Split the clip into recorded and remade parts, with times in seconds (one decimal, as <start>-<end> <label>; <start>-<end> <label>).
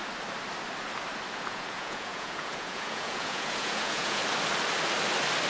0.0-1.3 recorded; 1.3-4.2 remade; 4.2-5.5 recorded